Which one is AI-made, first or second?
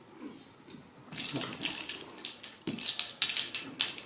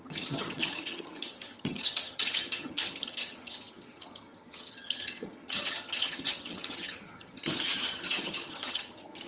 second